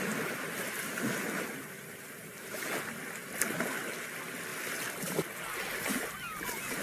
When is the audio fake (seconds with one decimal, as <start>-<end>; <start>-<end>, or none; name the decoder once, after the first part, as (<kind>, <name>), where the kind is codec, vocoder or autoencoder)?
none